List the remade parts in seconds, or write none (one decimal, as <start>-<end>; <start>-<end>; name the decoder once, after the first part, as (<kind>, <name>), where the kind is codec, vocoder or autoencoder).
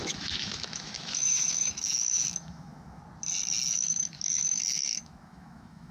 0.0-3.0 (autoencoder, DAC-VAE); 3.7-5.9